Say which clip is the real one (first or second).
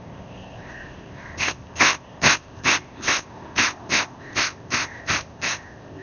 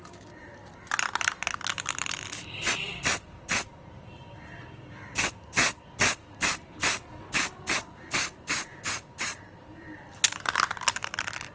second